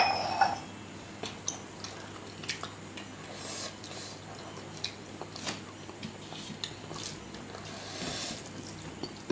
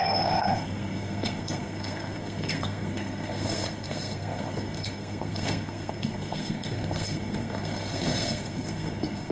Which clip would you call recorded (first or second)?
first